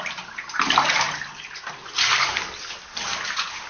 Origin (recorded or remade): recorded